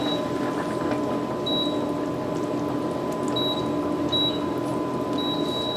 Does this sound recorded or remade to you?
recorded